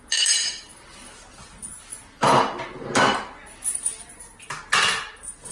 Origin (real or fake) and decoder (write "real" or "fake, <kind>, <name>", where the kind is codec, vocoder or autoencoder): real